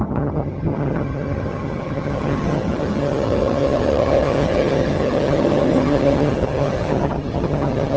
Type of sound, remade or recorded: remade